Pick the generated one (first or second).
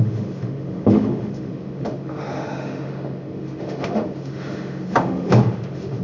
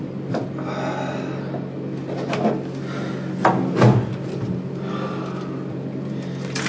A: first